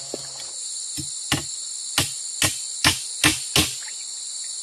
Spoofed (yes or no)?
no